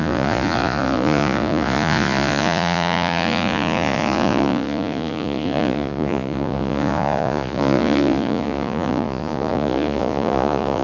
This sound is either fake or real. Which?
fake